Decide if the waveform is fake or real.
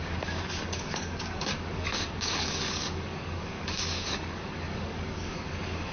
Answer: fake